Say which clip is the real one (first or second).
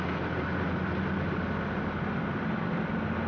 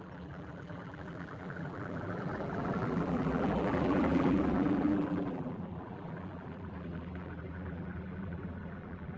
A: first